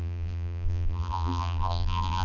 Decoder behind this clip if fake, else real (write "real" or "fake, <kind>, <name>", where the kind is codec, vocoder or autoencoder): fake, vocoder, BigVGAN v2